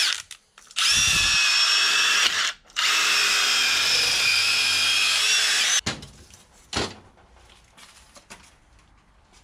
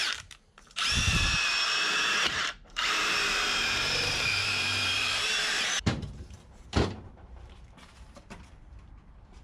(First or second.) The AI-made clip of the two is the second